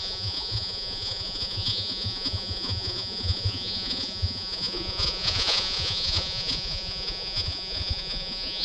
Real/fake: fake